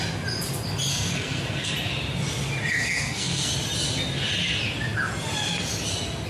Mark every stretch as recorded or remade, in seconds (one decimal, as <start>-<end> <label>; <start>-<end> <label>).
0.0-0.9 recorded; 0.9-1.7 remade; 1.7-2.7 recorded; 2.7-3.5 remade; 3.5-6.3 recorded